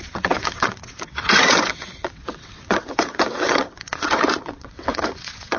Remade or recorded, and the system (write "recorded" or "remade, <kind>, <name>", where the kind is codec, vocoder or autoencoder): remade, vocoder, WaveNeXt